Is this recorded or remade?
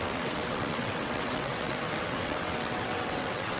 remade